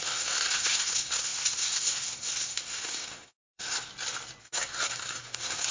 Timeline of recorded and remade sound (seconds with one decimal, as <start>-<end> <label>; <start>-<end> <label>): 0.0-3.9 remade; 3.9-4.4 recorded; 4.4-5.7 remade